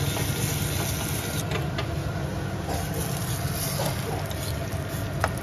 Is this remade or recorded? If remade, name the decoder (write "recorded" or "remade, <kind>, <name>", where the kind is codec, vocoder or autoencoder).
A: recorded